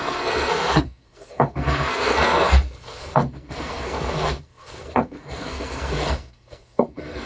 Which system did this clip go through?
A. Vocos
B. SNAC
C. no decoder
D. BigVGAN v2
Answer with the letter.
B